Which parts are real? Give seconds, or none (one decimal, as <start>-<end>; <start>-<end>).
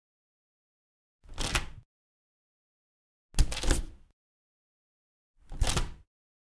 0.0-6.5